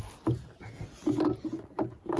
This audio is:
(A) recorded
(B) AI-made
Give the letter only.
A